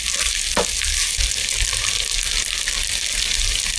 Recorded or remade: recorded